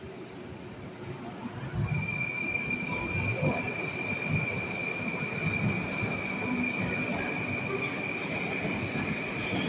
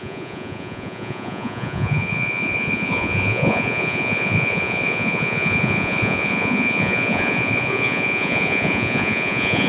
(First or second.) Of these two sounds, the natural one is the first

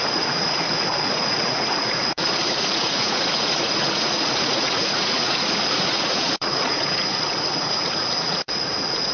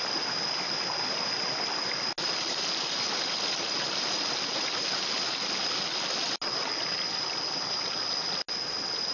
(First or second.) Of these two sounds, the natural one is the second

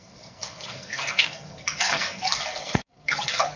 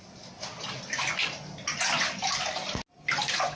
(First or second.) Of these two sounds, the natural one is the second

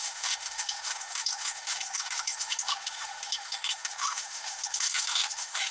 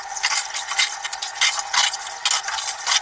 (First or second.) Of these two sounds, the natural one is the second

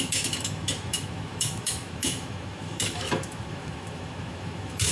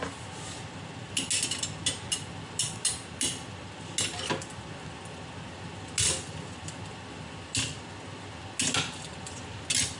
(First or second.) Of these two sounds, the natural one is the second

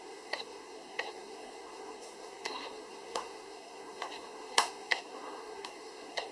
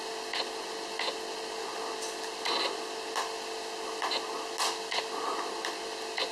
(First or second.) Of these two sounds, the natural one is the second